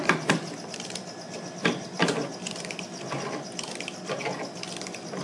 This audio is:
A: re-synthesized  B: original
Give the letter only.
A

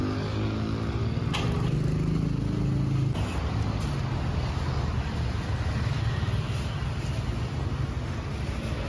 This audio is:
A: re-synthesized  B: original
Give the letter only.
B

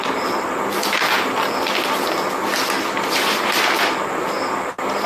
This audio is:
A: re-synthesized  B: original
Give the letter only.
B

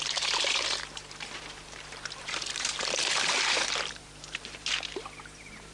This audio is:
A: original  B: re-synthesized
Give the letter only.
B